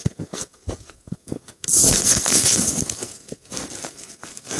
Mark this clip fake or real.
fake